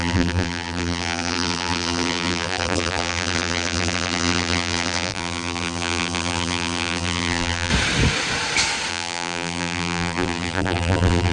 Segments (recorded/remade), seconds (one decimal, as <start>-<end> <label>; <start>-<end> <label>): 0.0-7.7 remade; 7.7-8.9 recorded; 8.9-11.3 remade